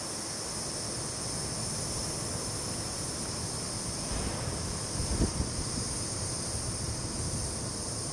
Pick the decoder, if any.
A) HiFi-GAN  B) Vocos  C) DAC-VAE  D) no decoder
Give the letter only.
D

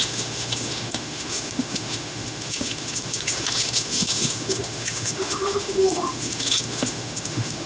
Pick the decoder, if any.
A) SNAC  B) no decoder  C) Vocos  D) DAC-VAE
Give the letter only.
D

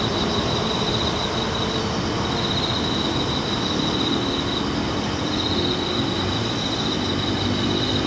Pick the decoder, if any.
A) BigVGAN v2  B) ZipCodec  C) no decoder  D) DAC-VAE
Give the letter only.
C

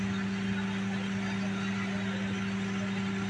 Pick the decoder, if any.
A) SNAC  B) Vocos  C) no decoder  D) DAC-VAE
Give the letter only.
C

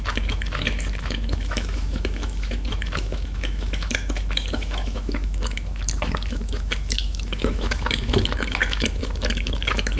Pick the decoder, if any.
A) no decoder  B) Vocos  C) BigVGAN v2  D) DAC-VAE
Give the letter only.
D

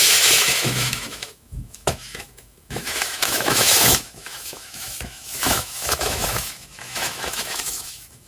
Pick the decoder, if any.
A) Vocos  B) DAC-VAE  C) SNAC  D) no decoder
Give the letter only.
B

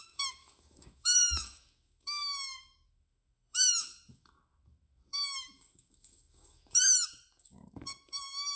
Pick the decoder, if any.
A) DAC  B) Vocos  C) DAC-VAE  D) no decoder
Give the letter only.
C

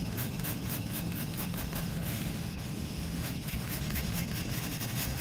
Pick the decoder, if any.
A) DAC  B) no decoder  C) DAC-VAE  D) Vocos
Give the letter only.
C